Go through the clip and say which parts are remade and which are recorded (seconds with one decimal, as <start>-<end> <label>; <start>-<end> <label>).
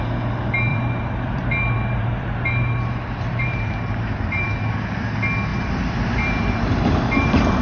0.0-0.7 recorded; 0.7-4.7 remade; 4.7-5.5 recorded; 5.5-7.6 remade